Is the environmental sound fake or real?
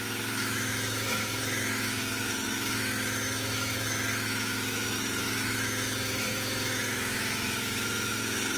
fake